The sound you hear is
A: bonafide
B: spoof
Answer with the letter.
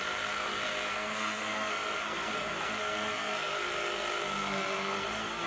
B